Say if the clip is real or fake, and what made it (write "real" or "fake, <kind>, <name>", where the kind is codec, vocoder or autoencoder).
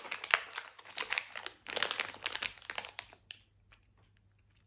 real